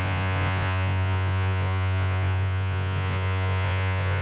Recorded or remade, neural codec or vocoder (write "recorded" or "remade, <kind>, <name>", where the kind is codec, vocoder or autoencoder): remade, vocoder, Vocos